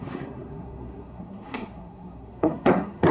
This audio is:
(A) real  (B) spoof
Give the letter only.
B